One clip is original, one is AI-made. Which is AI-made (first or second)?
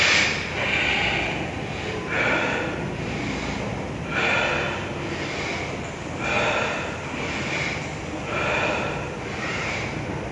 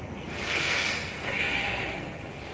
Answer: second